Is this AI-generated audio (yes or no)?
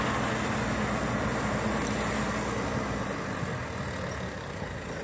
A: no